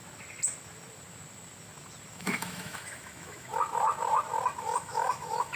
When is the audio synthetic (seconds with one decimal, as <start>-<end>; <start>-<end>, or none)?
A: 2.1-3.5; 4.6-5.6